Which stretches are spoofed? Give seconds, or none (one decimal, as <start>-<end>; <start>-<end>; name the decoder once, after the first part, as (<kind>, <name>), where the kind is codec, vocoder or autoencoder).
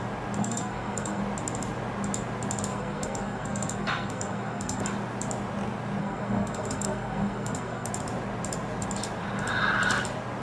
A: 0.4-1.2 (codec, SNAC); 2.7-4.8; 6.0-7.9